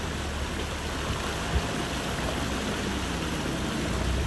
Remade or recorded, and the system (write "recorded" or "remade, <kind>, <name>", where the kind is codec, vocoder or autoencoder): recorded